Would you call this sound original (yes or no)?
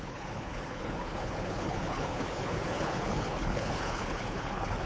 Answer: no